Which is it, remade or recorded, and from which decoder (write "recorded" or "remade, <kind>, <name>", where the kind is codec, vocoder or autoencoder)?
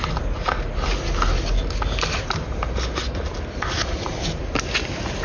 recorded